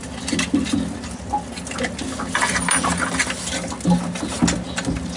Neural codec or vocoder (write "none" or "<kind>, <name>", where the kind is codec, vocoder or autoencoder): none